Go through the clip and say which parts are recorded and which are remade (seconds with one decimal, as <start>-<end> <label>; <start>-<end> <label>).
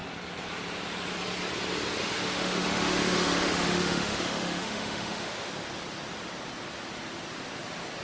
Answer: 0.0-2.0 recorded; 2.0-5.5 remade; 5.5-8.0 recorded